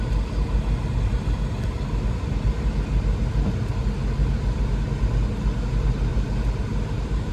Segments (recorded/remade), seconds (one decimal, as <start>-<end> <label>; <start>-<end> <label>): 0.0-6.1 recorded; 6.1-7.3 remade

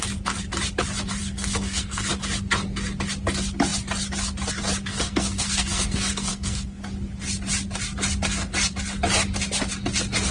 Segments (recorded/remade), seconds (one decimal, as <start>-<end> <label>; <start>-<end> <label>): 0.0-1.2 recorded; 1.2-2.1 remade; 2.1-4.9 recorded; 4.9-6.8 remade; 6.8-10.3 recorded

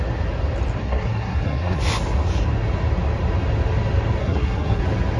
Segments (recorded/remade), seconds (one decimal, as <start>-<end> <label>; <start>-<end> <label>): 0.0-0.8 recorded; 0.8-1.8 remade; 1.8-4.2 recorded; 4.2-4.8 remade; 4.8-5.2 recorded

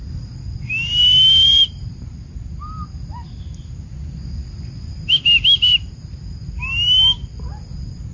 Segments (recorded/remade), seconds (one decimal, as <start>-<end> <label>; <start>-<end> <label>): 0.0-1.0 recorded; 1.0-1.9 remade; 1.9-7.2 recorded; 7.2-8.1 remade

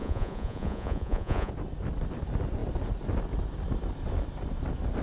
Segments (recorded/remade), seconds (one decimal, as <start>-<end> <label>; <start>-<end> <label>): 0.0-1.5 remade; 1.5-5.0 recorded

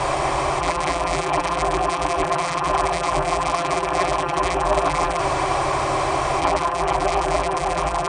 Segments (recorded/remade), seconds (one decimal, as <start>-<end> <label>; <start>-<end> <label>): 0.0-0.6 recorded; 0.6-5.2 remade; 5.2-6.4 recorded; 6.4-8.1 remade

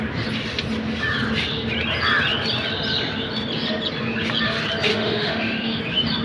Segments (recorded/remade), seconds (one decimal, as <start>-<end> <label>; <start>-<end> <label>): 0.0-4.9 recorded; 4.9-5.8 remade; 5.8-6.2 recorded